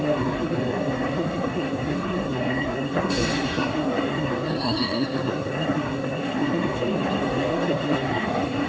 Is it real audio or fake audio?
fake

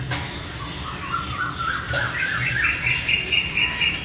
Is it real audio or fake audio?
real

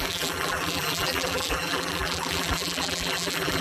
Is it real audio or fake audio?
fake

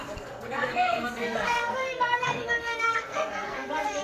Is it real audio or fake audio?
fake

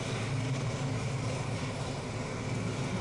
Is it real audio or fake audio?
real